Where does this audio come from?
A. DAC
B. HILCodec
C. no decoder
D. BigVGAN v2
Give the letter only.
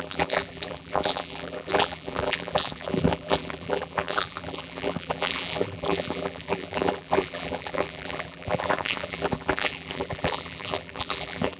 D